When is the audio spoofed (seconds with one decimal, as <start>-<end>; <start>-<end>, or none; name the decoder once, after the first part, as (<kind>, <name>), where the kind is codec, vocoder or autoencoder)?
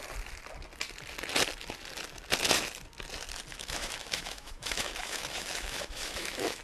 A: 3.5-6.6 (autoencoder, DAC-VAE)